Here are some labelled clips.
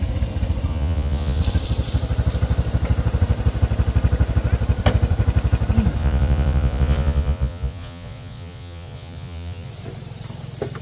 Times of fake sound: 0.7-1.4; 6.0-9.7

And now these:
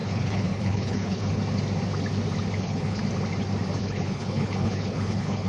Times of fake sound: 0.0-1.4; 2.6-3.0; 3.8-5.5

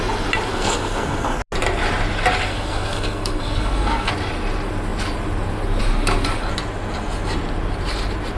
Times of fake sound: 0.5-1.4; 2.5-4.1

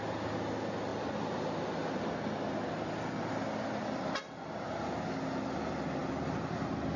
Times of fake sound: none

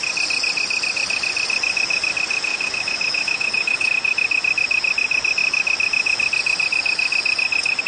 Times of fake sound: 2.5-3.9

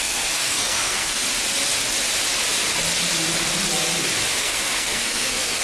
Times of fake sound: 0.0-1.2; 4.4-5.6

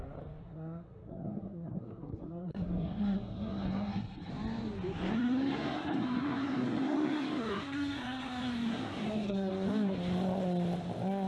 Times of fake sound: 0.4-4.3; 5.1-9.5

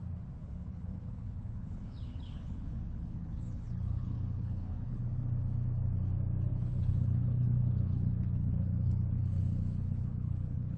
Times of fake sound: 0.4-5.0; 6.5-10.8